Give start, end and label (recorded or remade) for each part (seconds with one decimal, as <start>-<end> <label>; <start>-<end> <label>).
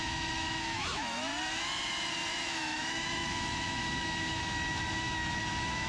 0.0-1.3 remade; 1.3-2.3 recorded; 2.3-5.9 remade